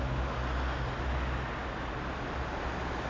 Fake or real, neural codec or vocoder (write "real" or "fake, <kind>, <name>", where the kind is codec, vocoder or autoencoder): real